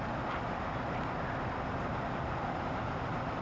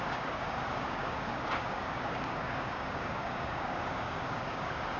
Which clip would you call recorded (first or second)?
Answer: first